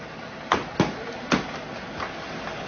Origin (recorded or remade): recorded